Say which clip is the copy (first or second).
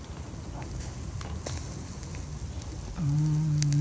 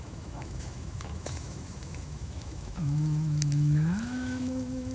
second